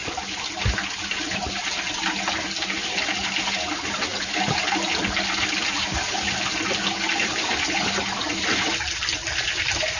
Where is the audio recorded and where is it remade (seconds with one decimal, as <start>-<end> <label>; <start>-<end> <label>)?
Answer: 0.0-10.0 recorded